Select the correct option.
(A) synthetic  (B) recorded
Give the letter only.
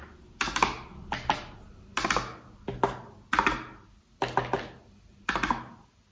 B